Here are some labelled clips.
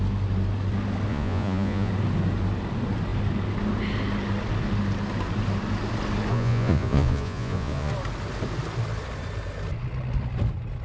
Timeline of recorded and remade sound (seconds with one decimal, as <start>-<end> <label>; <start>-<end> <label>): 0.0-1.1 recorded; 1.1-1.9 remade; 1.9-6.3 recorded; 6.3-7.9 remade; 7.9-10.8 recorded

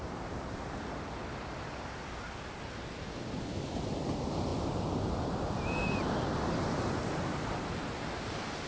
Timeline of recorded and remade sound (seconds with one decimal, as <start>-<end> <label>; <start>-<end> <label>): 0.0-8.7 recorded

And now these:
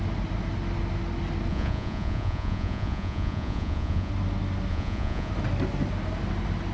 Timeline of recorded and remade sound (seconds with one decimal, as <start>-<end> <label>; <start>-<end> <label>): 0.0-1.5 recorded; 1.5-4.1 remade; 4.1-4.7 recorded; 4.7-5.3 remade; 5.3-6.7 recorded

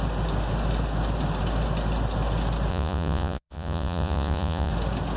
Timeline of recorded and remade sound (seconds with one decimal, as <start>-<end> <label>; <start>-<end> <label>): 0.0-2.7 recorded; 2.7-4.7 remade; 4.7-5.2 recorded

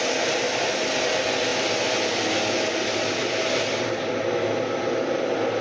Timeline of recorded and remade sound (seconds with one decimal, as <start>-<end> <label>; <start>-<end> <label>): 0.0-5.6 recorded

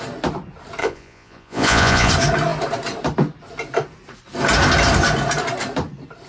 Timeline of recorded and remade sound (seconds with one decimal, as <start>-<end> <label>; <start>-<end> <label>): 0.0-0.8 recorded; 0.8-2.1 remade; 2.1-6.3 recorded

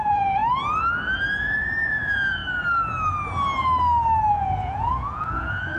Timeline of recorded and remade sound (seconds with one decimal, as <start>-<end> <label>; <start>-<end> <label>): 0.0-0.4 remade; 0.4-1.4 recorded; 1.4-2.4 remade; 2.4-4.3 recorded; 4.3-5.8 remade

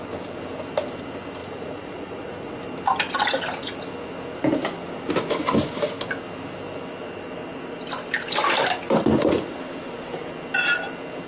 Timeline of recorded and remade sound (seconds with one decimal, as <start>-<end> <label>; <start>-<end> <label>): 0.0-1.4 recorded; 1.4-2.6 remade; 2.6-11.3 recorded